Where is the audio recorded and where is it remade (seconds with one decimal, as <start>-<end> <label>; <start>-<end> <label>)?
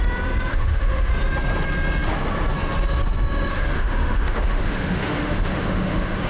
0.0-0.5 recorded; 0.5-1.1 remade; 1.1-3.5 recorded; 3.5-6.3 remade